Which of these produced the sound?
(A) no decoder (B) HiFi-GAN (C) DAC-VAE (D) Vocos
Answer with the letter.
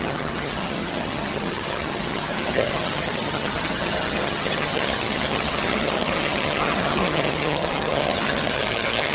B